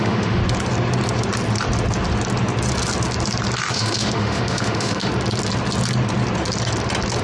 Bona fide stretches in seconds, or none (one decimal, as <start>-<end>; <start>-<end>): 0.4-3.7; 5.1-7.2